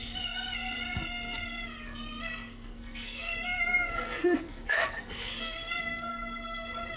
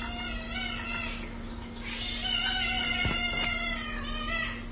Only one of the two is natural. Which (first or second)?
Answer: second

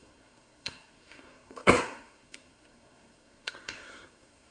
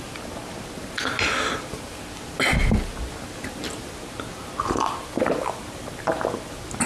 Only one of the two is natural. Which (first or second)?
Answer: second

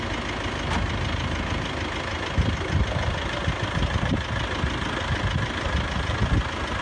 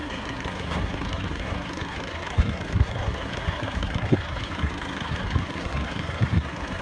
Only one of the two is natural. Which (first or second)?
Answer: first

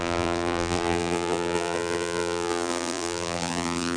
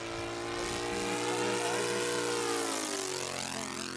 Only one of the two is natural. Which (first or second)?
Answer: second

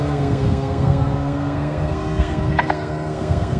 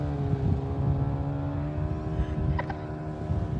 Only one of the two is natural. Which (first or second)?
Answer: second